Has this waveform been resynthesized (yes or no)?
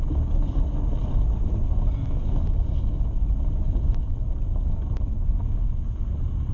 no